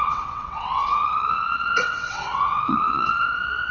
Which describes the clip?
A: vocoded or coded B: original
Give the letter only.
A